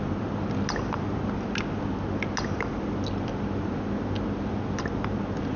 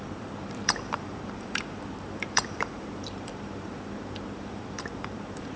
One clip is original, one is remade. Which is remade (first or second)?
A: second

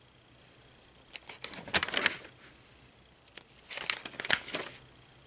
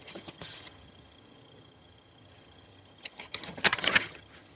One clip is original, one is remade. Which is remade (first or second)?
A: second